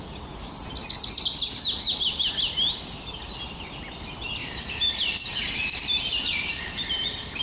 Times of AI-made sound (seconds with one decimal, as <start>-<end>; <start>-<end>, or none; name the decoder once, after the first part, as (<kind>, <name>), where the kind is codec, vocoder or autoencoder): 4.4-7.4 (vocoder, BigVGAN v2)